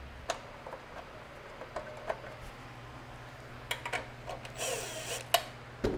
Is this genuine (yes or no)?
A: yes